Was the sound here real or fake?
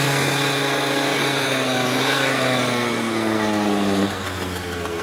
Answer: fake